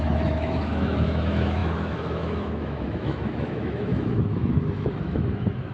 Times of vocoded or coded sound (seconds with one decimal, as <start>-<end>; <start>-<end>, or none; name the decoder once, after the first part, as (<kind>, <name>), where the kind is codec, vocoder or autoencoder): 0.0-5.7 (autoencoder, DAC-VAE)